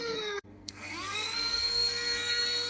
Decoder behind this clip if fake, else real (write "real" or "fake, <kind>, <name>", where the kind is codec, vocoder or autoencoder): fake, codec, SNAC